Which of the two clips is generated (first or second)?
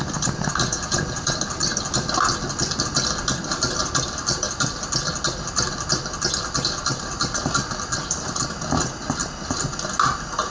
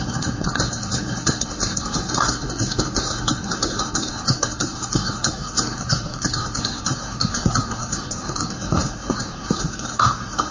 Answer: second